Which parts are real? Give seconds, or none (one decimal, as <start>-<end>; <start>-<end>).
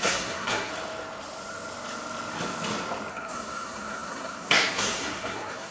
0.7-3.1